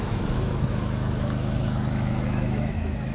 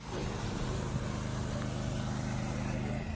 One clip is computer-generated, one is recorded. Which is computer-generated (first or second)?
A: first